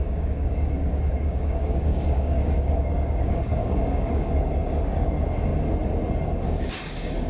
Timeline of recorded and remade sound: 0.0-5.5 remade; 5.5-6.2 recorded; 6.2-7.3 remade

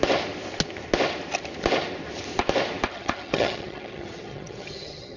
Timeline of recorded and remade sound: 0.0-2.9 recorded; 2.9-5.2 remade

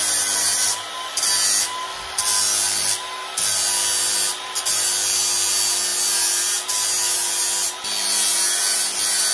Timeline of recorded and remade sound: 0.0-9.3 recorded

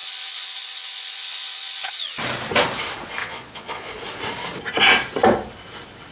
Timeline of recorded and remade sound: 0.0-2.2 remade; 2.2-3.2 recorded; 3.2-3.9 remade; 3.9-6.1 recorded

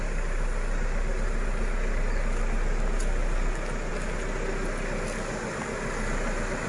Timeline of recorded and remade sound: 0.0-6.7 recorded

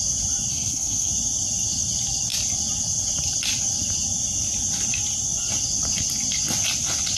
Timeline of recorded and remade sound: 0.0-0.5 recorded; 0.5-1.1 remade; 1.1-7.2 recorded

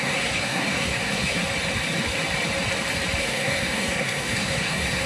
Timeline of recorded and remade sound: 0.0-1.4 remade; 1.4-3.2 recorded; 3.2-5.1 remade

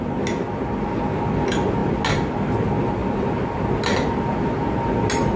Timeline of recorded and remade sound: 0.0-5.4 recorded